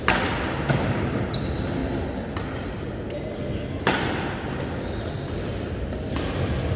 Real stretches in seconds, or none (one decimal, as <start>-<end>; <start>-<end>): 0.0-6.8